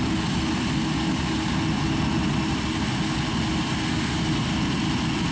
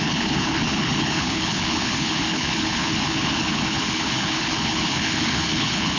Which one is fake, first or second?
second